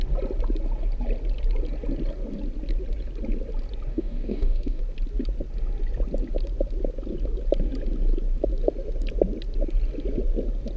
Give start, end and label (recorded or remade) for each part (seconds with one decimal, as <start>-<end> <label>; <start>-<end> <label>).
0.0-3.9 recorded; 3.9-4.8 remade; 4.8-10.8 recorded